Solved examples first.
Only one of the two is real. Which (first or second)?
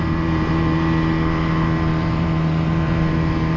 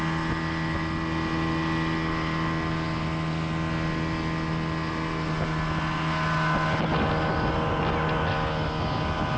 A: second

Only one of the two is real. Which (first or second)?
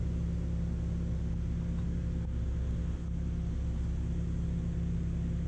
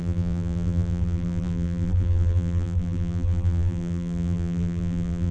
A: first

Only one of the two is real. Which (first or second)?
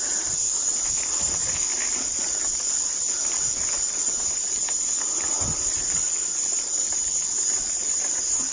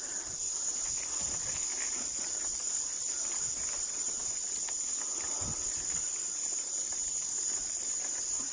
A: first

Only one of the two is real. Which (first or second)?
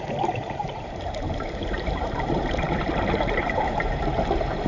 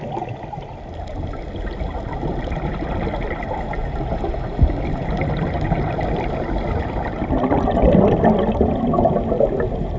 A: second